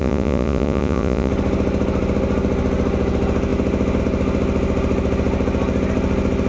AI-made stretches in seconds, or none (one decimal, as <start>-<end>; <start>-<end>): 0.0-1.3